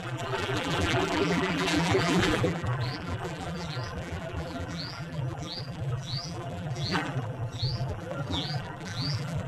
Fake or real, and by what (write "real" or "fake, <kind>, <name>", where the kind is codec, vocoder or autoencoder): fake, vocoder, BigVGAN v2